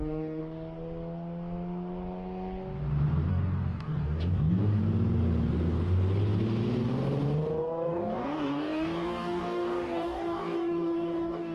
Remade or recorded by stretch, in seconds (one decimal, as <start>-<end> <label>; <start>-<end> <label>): 0.0-0.4 remade; 0.4-3.3 recorded; 3.3-4.8 remade; 4.8-7.6 recorded; 7.6-11.5 remade

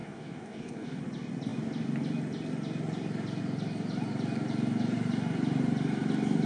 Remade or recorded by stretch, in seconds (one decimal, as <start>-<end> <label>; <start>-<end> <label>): 0.0-1.0 remade; 1.0-6.5 recorded

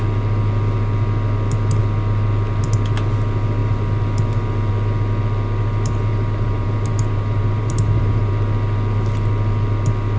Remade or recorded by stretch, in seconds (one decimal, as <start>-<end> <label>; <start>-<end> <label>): 0.0-6.1 recorded; 6.1-8.3 remade; 8.3-10.2 recorded

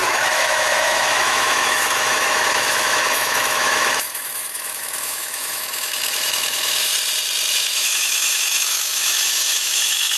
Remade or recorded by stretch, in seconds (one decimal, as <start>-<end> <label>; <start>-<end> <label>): 0.0-6.9 remade; 6.9-7.5 recorded; 7.5-10.2 remade

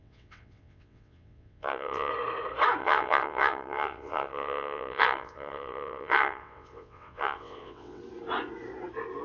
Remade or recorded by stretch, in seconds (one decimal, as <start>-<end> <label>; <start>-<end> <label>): 0.0-2.1 remade; 2.1-2.8 recorded; 2.8-8.0 remade; 8.0-9.2 recorded